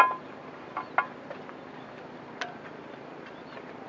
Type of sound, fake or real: real